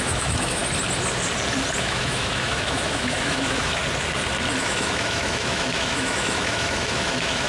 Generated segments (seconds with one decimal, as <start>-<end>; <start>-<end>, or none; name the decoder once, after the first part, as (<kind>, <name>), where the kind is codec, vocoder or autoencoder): 0.0-0.6 (autoencoder, DAC-VAE); 1.8-3.8; 4.6-7.5